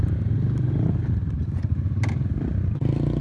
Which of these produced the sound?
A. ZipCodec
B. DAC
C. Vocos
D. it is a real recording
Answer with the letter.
D